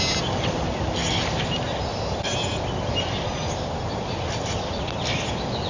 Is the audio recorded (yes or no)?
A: yes